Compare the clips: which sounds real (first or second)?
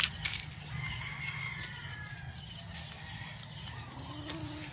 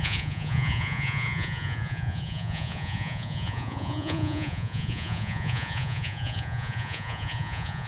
first